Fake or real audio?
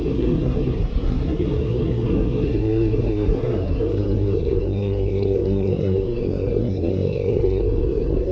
fake